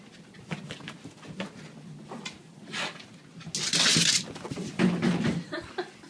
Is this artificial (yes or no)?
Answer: no